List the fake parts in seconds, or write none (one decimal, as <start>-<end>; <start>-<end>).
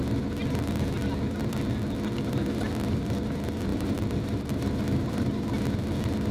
3.7-5.5